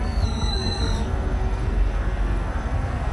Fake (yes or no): yes